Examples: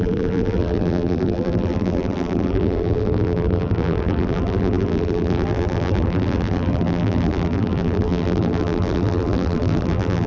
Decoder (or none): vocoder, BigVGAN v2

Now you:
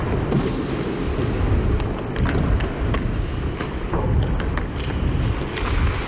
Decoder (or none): none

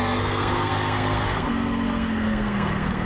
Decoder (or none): codec, SNAC